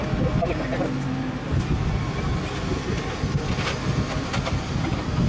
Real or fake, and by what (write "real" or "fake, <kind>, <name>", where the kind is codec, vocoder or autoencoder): real